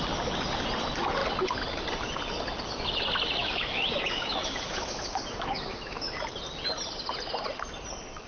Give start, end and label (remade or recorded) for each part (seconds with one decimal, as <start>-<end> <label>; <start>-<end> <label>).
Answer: 0.0-3.4 recorded; 3.4-6.2 remade; 6.2-8.3 recorded